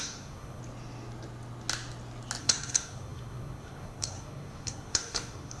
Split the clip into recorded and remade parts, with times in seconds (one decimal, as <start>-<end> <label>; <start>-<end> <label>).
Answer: 0.0-0.6 remade; 0.6-2.4 recorded; 2.4-5.6 remade